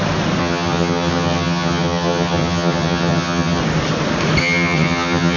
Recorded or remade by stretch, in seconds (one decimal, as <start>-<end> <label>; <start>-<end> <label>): 0.0-0.4 recorded; 0.4-3.6 remade; 3.6-4.4 recorded; 4.4-5.4 remade